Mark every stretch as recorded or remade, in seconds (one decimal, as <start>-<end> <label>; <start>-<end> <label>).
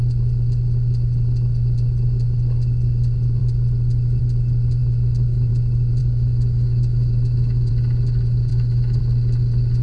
0.0-4.8 recorded; 4.8-5.5 remade; 5.5-6.0 recorded; 6.0-7.7 remade; 7.7-8.5 recorded; 8.5-9.0 remade; 9.0-9.8 recorded